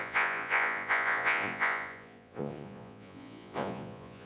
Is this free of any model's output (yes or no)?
no